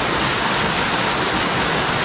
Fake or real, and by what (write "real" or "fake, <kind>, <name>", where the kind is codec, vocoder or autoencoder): real